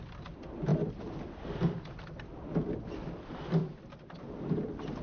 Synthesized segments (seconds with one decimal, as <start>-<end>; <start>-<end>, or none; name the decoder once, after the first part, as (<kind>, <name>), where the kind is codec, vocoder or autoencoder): none